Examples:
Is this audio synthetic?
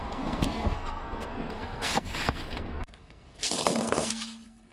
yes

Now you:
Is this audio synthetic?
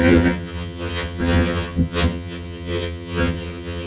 yes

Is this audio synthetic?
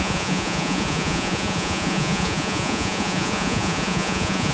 yes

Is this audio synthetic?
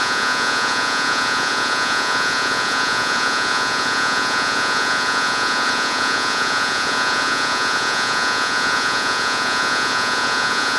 yes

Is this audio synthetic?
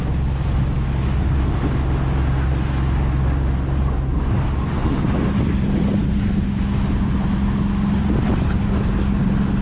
no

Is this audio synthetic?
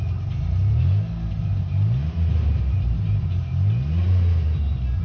no